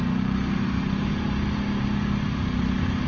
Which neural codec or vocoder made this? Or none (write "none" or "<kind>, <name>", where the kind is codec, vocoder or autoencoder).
none